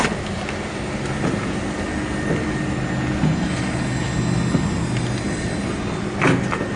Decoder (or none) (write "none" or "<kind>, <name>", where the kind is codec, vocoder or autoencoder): none